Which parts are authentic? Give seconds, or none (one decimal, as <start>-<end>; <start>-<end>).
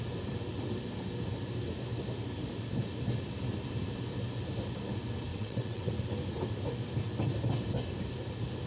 0.0-5.3; 5.9-8.7